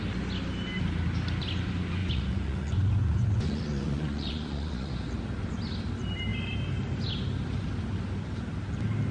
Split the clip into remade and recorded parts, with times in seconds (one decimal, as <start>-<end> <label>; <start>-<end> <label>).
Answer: 0.0-2.0 recorded; 2.0-4.9 remade; 4.9-9.1 recorded